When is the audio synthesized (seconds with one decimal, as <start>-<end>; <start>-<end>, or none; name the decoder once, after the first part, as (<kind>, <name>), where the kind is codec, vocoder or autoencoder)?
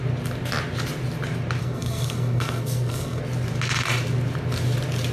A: 1.6-3.2 (codec, SNAC)